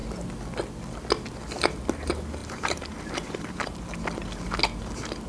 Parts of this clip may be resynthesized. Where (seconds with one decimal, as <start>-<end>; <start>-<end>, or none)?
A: 2.4-3.8